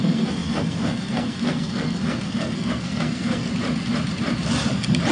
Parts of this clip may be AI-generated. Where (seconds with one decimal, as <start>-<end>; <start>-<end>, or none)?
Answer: 0.0-3.5